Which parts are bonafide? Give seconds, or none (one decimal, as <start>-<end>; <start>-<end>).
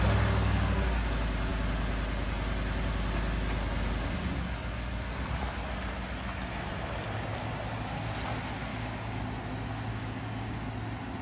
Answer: 0.0-8.7; 9.2-9.9; 10.7-11.2